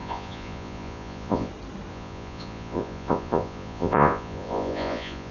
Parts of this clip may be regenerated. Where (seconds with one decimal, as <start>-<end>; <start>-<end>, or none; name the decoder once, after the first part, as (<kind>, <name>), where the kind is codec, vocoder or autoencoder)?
0.0-1.5 (vocoder, Vocos); 1.9-5.3